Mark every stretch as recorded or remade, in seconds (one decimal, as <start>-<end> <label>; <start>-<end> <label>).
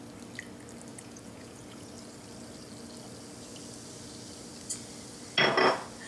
0.0-0.9 recorded; 0.9-1.9 remade; 1.9-6.1 recorded